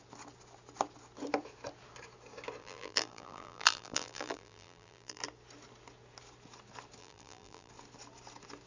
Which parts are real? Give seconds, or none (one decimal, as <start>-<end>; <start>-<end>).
0.0-2.6; 5.2-7.0; 7.7-8.7